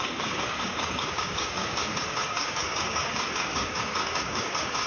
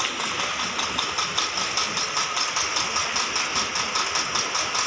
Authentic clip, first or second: second